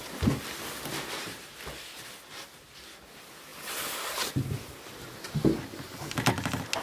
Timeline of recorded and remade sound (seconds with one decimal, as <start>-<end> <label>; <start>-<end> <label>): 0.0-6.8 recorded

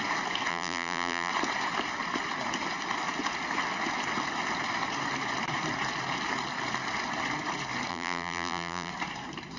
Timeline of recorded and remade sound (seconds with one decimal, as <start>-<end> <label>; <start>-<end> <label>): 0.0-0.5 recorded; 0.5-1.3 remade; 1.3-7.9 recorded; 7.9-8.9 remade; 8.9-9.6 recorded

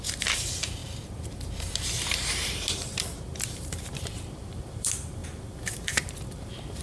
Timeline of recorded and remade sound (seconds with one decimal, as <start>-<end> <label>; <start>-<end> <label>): 0.0-6.8 remade